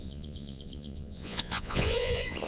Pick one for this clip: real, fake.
fake